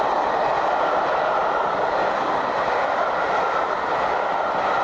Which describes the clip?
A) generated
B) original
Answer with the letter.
B